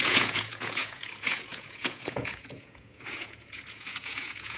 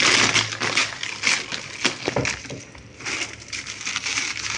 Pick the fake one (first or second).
first